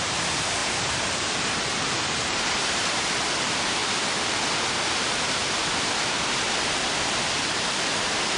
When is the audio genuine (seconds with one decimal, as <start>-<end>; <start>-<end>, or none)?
3.8-5.0; 5.6-6.5